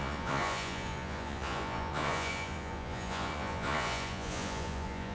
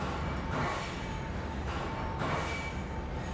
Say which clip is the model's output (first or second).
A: first